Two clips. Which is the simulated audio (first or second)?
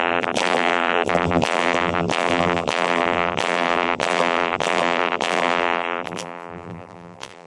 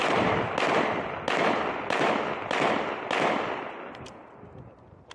first